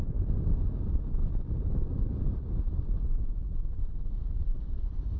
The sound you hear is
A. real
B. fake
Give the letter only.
A